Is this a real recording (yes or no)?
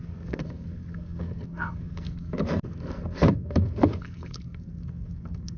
no